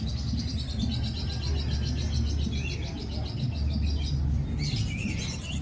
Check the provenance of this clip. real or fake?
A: real